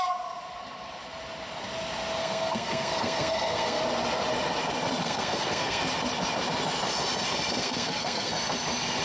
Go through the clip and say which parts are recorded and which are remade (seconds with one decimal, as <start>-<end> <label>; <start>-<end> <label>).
0.0-2.2 recorded; 2.2-3.8 remade; 3.8-5.0 recorded; 5.0-5.8 remade; 5.8-7.6 recorded; 7.6-8.3 remade; 8.3-9.0 recorded